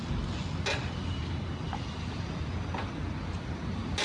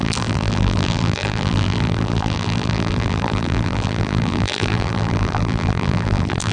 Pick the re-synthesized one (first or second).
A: second